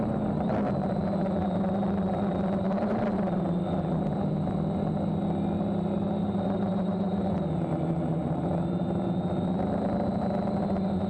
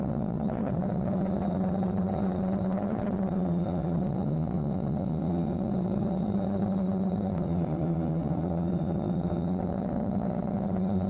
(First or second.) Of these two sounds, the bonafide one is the first